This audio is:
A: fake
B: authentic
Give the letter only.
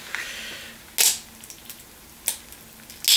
B